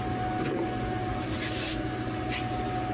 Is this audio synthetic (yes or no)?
no